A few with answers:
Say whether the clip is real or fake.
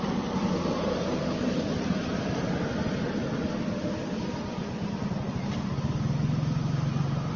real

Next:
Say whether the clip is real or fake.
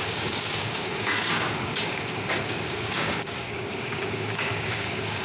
fake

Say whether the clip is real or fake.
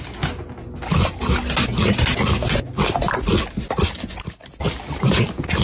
real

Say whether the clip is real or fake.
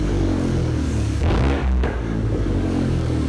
fake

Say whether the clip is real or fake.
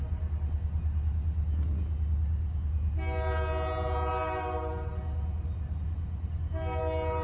real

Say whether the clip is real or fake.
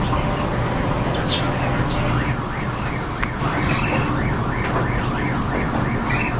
real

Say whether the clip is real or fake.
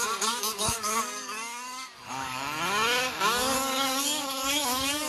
fake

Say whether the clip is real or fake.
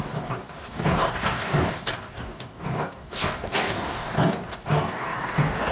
fake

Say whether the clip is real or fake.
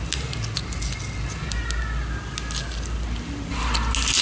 real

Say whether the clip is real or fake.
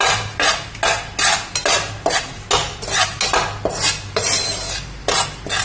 real